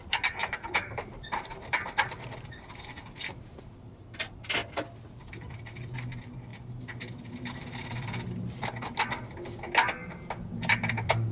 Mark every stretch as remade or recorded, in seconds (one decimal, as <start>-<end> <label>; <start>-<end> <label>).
0.0-11.3 recorded